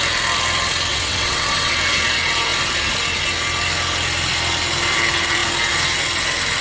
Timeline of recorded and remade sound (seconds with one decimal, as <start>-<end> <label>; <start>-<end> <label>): 0.0-0.9 recorded; 0.9-1.7 remade; 1.7-6.6 recorded